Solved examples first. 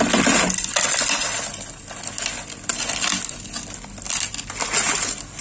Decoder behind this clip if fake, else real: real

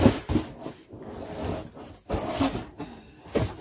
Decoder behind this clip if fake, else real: real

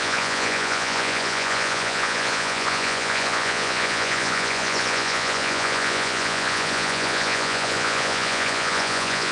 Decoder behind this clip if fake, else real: fake, vocoder, Vocos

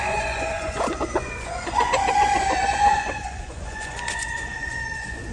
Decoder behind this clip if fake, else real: fake, vocoder, Vocos